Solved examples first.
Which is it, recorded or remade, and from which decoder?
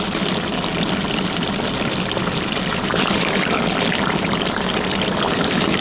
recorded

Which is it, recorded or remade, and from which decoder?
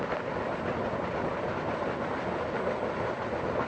recorded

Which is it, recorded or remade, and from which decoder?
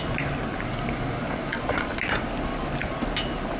recorded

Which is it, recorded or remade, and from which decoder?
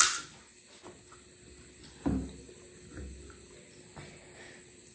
recorded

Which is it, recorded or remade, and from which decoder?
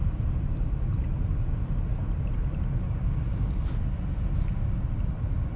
recorded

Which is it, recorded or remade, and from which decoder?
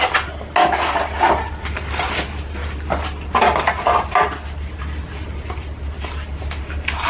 recorded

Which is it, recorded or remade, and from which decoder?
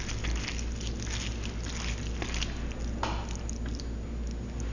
recorded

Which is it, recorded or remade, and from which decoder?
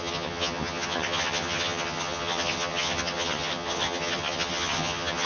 remade, vocoder, HiFi-GAN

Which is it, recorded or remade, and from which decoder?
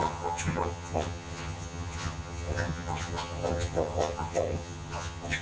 remade, vocoder, HiFi-GAN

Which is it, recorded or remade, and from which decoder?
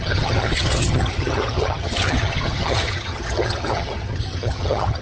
remade, vocoder, HiFi-GAN